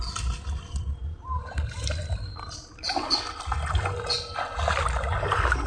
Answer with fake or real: real